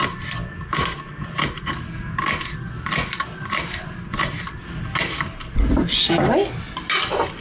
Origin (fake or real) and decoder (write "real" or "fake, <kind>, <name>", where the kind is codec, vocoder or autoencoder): real